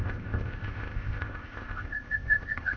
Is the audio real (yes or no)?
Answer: no